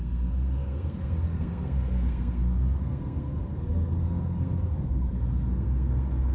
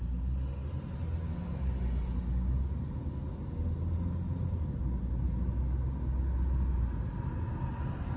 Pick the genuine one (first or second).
second